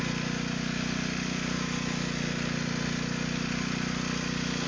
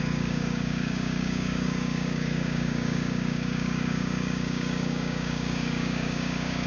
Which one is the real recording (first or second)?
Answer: first